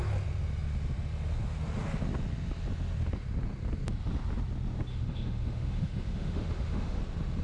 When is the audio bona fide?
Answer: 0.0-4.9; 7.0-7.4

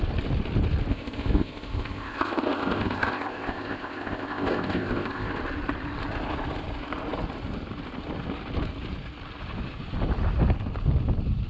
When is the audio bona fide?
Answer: 0.0-0.9; 5.3-11.5

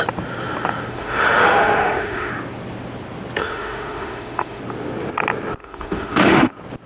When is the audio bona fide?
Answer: 0.0-0.9; 2.3-3.4; 4.6-5.6; 6.5-6.9

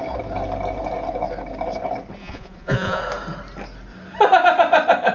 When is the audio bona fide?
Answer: 0.0-2.2; 3.0-5.1

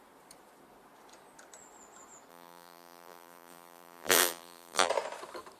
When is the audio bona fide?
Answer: 0.0-2.3; 4.9-5.6